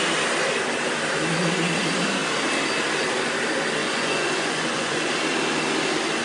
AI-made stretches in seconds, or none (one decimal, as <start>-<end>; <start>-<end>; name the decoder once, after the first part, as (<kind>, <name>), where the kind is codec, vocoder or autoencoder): 3.8-5.1 (vocoder, Vocos)